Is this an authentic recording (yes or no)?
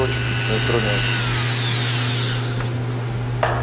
yes